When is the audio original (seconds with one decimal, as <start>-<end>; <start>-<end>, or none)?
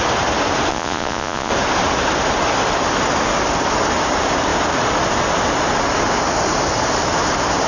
0.0-0.7; 1.5-7.7